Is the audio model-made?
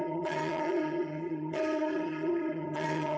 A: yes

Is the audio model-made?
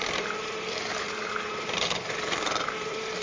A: yes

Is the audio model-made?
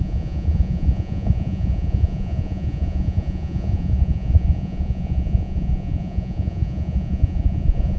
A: yes